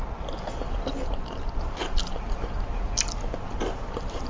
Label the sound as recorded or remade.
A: recorded